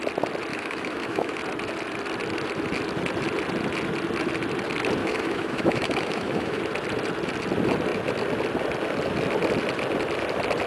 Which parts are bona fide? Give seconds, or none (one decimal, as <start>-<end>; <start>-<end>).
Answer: 0.0-0.5; 1.4-5.0; 6.6-10.7